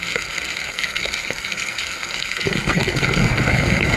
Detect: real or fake fake